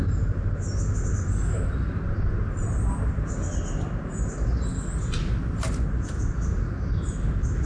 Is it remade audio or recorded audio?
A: recorded